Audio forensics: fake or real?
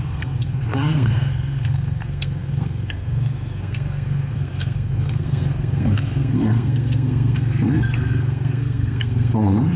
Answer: fake